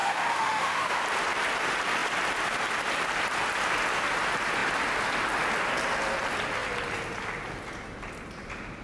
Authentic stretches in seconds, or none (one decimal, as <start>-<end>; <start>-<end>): 0.9-8.8